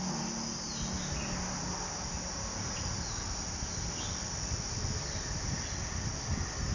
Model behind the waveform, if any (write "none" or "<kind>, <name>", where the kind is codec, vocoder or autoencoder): none